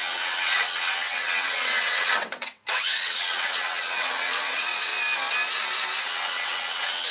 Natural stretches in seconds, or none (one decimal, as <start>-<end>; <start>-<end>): 4.9-6.0